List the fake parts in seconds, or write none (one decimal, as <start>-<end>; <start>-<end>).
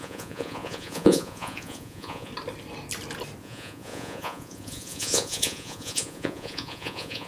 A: 0.0-2.3; 3.4-7.3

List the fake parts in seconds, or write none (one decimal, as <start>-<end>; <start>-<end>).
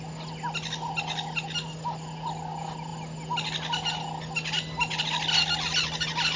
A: none